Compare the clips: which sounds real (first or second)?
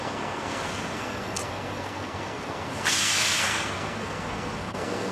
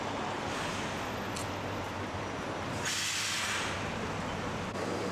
second